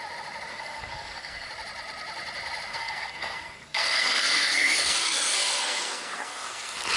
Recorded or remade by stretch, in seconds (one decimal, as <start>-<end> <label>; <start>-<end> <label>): 0.0-0.5 recorded; 0.5-1.5 remade; 1.5-2.7 recorded; 2.7-7.0 remade